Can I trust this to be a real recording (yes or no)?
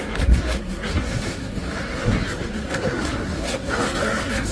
no